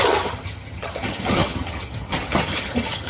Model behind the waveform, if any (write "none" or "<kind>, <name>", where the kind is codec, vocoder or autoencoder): vocoder, HiFi-GAN